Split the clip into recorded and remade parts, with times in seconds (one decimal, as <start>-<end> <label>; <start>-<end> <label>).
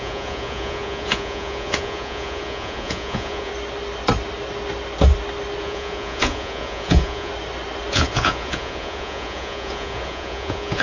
0.0-3.5 remade; 3.5-5.6 recorded; 5.6-7.3 remade; 7.3-7.9 recorded; 7.9-10.8 remade